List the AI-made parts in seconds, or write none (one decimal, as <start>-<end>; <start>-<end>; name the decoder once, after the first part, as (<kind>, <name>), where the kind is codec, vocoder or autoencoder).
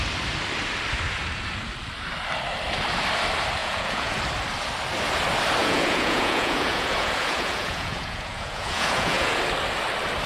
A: 3.6-4.2 (vocoder, Vocos); 5.6-9.4